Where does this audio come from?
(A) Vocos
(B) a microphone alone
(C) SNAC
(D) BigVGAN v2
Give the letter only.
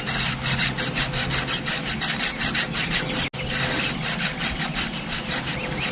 B